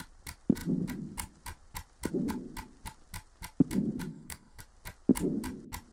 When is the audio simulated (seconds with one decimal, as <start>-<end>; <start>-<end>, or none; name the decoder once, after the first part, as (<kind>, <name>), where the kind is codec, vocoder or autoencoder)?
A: 4.1-4.6 (codec, SNAC)